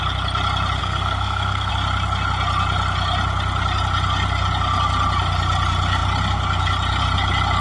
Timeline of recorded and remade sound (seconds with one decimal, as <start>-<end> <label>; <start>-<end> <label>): 0.0-0.8 recorded; 0.8-1.7 remade; 1.7-7.6 recorded